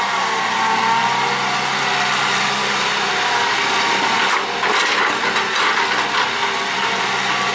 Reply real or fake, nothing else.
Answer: real